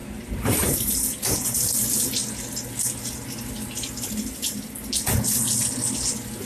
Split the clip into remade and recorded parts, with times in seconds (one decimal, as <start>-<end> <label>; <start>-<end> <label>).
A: 0.0-0.9 remade; 0.9-6.5 recorded

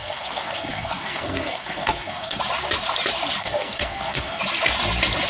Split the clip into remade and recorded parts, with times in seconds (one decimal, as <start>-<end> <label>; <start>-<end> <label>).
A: 0.0-2.4 remade; 2.4-3.4 recorded; 3.4-4.4 remade; 4.4-5.3 recorded

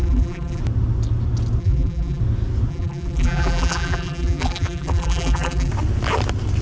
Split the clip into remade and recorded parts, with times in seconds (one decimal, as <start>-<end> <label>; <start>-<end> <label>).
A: 0.0-0.6 remade; 0.6-1.6 recorded; 1.6-2.2 remade; 2.2-2.7 recorded; 2.7-5.7 remade; 5.7-6.6 recorded